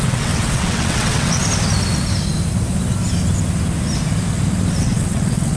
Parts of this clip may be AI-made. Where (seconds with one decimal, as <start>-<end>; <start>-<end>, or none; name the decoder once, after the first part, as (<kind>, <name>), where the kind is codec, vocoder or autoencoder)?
0.0-1.4 (vocoder, WaveNeXt); 4.8-5.6